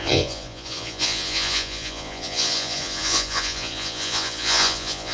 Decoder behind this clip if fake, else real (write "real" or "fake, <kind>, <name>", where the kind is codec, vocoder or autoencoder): fake, vocoder, Vocos